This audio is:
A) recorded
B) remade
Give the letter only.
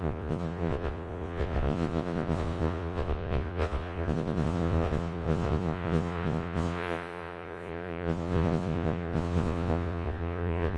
B